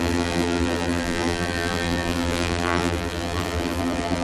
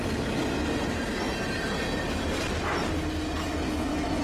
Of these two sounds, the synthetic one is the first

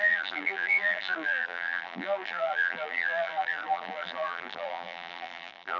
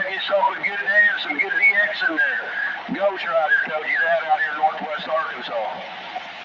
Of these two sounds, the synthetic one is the first